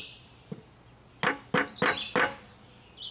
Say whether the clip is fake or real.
real